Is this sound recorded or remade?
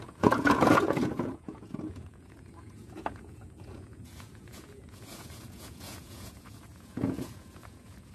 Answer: remade